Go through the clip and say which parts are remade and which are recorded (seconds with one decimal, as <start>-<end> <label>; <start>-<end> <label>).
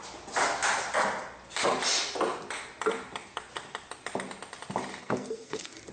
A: 0.0-5.0 recorded; 5.0-5.9 remade